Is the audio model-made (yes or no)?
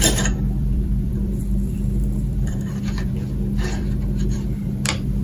yes